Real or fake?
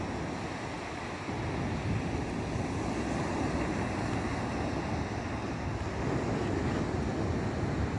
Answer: real